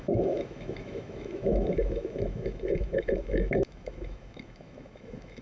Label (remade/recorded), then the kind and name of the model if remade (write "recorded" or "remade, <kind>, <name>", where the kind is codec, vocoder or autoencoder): remade, autoencoder, DAC-VAE